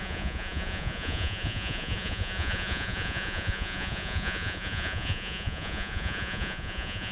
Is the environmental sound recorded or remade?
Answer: remade